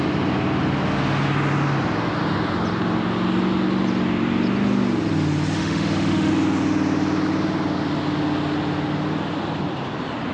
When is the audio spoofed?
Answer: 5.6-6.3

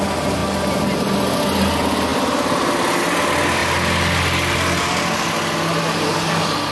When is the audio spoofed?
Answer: none

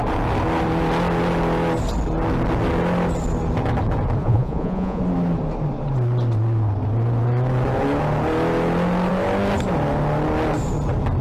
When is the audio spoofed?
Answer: 4.2-5.0

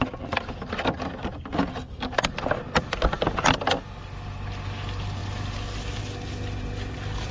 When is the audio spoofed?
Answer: none

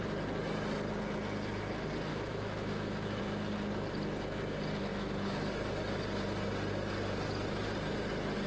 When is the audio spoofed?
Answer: 2.1-3.2; 4.9-6.0

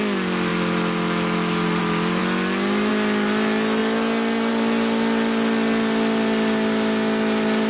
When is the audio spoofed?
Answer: none